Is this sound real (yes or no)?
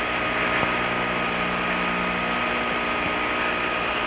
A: yes